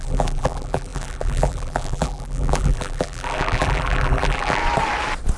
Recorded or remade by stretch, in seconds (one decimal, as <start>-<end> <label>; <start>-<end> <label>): 0.0-4.6 remade; 4.6-5.4 recorded